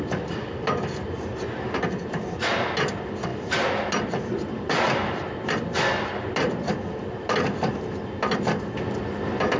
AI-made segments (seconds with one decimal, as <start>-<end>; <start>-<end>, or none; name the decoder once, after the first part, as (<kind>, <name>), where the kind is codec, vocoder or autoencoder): none